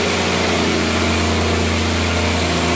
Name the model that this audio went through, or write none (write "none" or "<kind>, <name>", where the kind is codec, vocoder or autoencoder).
none